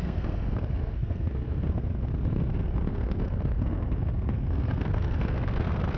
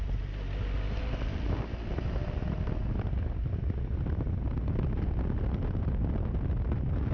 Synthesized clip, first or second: first